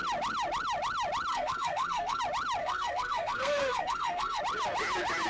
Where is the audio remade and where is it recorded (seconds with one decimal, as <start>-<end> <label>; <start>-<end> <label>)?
0.0-1.3 recorded; 1.3-2.2 remade; 2.2-2.6 recorded; 2.6-4.4 remade; 4.4-5.3 recorded

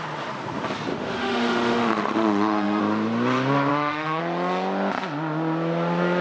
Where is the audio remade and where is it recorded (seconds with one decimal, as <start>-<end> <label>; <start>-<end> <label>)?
0.0-0.9 recorded; 0.9-2.8 remade; 2.8-3.7 recorded; 3.7-4.2 remade; 4.2-6.2 recorded

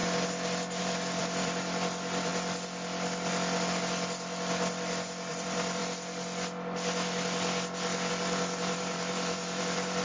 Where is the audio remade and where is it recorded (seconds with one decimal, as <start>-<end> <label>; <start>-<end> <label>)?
0.0-0.8 recorded; 0.8-2.3 remade; 2.3-5.3 recorded; 5.3-5.8 remade; 5.8-8.1 recorded; 8.1-10.0 remade

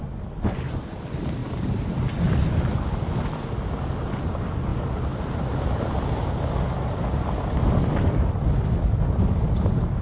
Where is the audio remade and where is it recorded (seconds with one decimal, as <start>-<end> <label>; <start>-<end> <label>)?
0.0-1.4 recorded; 1.4-2.0 remade; 2.0-4.7 recorded; 4.7-5.5 remade; 5.5-10.0 recorded